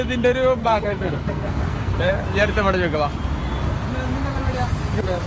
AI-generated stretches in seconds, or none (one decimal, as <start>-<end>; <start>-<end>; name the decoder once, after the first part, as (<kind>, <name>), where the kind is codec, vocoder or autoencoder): 0.6-2.1 (codec, SNAC)